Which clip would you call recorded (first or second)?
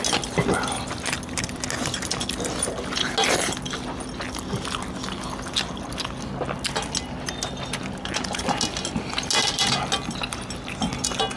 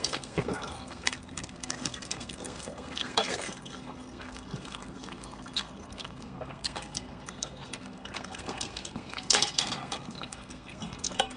first